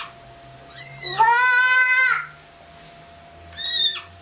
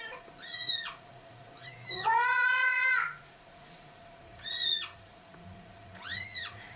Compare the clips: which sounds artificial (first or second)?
second